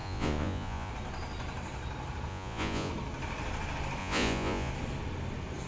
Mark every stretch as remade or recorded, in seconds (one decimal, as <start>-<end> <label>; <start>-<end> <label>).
0.0-0.9 remade; 0.9-2.3 recorded; 2.3-2.9 remade; 2.9-4.0 recorded; 4.0-4.7 remade; 4.7-5.7 recorded